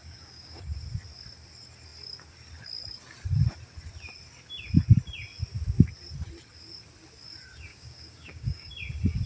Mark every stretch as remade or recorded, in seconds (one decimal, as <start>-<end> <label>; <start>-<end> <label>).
0.0-0.6 remade; 0.6-7.7 recorded; 7.7-8.7 remade; 8.7-9.3 recorded